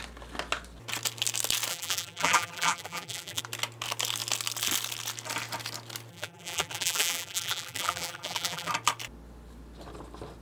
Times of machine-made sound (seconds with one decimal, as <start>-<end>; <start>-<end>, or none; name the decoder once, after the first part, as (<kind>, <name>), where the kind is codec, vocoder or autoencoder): 1.7-3.4 (vocoder, BigVGAN v2); 6.1-8.7